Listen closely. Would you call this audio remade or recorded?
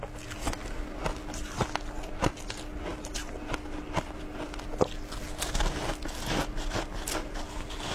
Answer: recorded